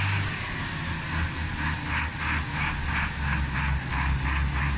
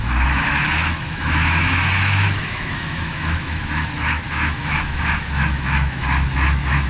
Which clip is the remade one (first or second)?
second